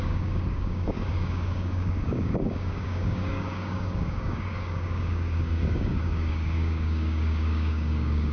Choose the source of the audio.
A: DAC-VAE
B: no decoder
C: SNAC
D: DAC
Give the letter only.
D